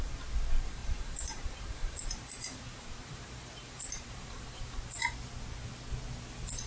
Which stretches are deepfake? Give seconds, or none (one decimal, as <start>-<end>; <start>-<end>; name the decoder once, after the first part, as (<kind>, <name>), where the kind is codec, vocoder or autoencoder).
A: 0.8-4.8 (vocoder, BigVGAN v2)